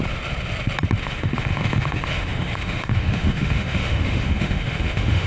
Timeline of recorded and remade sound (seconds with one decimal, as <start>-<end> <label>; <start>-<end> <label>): 0.0-1.0 recorded; 1.0-5.3 remade